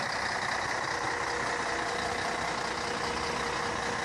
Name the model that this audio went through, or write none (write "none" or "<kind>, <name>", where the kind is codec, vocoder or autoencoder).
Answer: none